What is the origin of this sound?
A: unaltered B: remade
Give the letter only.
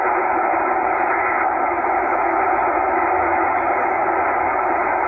A